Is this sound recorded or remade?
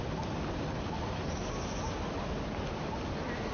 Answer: recorded